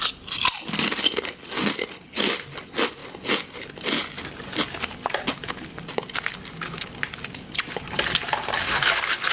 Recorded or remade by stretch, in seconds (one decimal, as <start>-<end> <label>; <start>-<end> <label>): 0.0-7.2 recorded; 7.2-9.3 remade